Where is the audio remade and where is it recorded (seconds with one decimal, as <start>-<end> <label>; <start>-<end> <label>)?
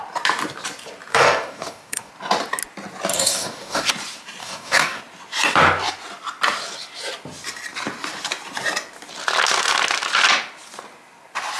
0.0-1.1 recorded; 1.1-2.1 remade; 2.1-3.1 recorded; 3.1-3.9 remade; 3.9-4.4 recorded; 4.4-5.0 remade; 5.0-11.6 recorded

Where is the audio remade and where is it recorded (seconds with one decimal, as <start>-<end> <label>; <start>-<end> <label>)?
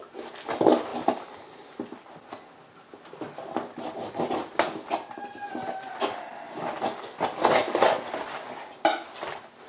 0.0-9.7 recorded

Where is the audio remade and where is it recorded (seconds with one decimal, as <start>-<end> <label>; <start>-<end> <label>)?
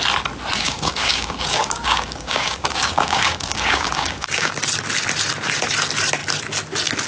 0.0-0.6 recorded; 0.6-4.5 remade; 4.5-7.1 recorded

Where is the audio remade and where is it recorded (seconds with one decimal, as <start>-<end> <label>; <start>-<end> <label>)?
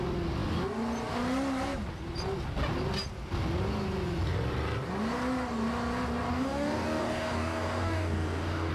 0.0-6.3 recorded; 6.3-8.7 remade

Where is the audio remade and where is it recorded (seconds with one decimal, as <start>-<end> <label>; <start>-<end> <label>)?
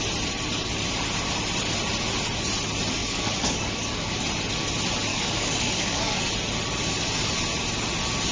0.0-3.0 recorded; 3.0-4.2 remade; 4.2-5.1 recorded; 5.1-6.3 remade; 6.3-8.3 recorded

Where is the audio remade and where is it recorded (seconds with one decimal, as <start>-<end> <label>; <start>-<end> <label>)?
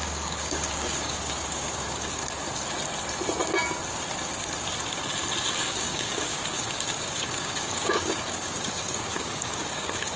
0.0-2.2 remade; 2.2-5.5 recorded; 5.5-10.2 remade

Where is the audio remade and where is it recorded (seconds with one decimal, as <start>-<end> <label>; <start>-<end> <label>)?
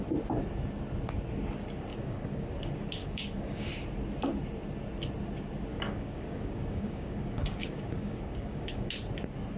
0.0-1.9 recorded; 1.9-2.5 remade; 2.5-3.0 recorded; 3.0-3.7 remade; 3.7-5.7 recorded; 5.7-8.9 remade; 8.9-9.6 recorded